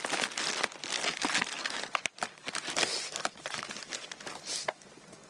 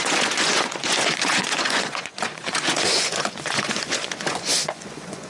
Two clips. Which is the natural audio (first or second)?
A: first